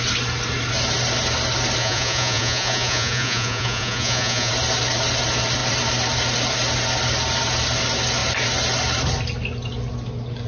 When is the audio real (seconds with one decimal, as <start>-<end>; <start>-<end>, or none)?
0.0-1.8; 4.5-10.5